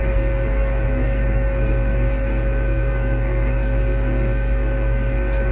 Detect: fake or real fake